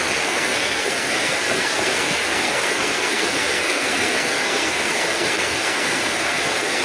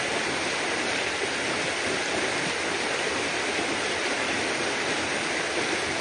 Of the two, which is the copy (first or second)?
first